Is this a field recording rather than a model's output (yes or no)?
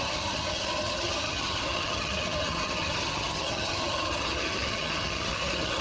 no